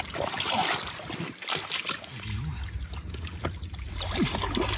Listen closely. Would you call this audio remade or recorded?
recorded